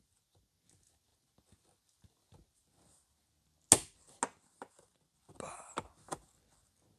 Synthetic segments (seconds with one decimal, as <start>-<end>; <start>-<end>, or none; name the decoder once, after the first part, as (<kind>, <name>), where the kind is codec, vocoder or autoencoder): none